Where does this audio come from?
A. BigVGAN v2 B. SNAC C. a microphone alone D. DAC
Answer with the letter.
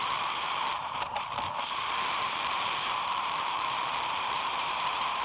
A